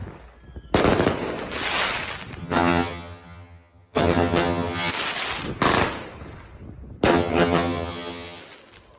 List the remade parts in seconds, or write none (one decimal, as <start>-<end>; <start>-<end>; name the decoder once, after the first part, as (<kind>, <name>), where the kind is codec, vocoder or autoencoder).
2.4-4.9 (vocoder, HiFi-GAN); 7.1-8.4